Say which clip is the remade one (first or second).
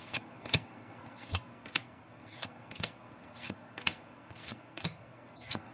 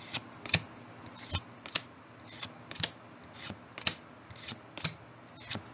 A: first